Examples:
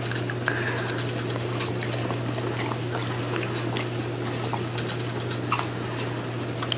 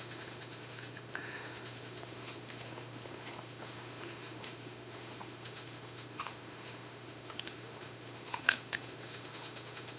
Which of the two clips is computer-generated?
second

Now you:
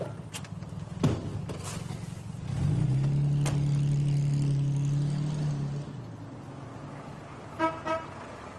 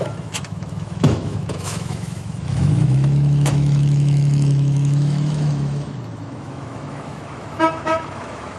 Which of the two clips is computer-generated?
second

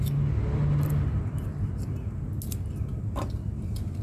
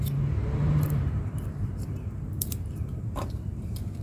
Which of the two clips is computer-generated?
second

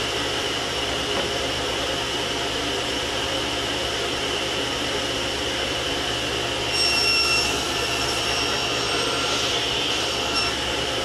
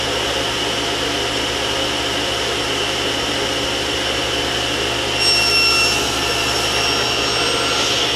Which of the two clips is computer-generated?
first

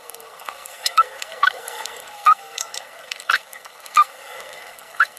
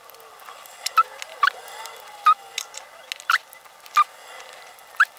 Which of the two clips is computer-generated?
first